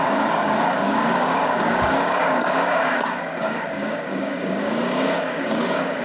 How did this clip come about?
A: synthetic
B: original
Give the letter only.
A